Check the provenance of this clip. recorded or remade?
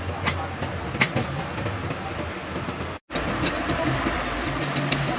recorded